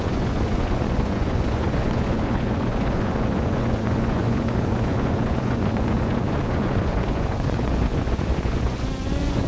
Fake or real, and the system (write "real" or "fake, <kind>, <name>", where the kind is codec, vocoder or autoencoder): fake, vocoder, Vocos